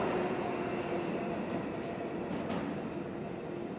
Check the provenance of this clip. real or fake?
real